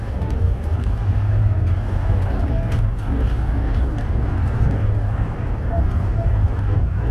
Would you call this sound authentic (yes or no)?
no